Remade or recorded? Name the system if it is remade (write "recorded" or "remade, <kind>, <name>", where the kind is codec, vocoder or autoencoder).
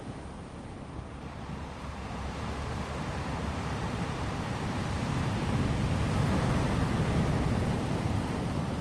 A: remade, vocoder, BigVGAN v2